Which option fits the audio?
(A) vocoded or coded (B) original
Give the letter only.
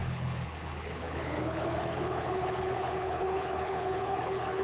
A